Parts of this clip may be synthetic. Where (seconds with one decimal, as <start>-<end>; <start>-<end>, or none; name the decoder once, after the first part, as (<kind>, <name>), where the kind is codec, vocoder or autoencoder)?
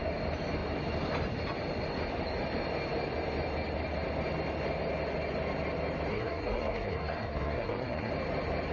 6.1-8.1 (codec, SNAC)